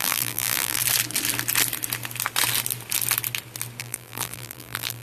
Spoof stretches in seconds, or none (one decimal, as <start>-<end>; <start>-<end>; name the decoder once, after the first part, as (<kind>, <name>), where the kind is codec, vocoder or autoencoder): 0.0-0.8 (vocoder, BigVGAN v2); 3.8-5.0